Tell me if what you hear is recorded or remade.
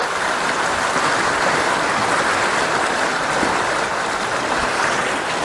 recorded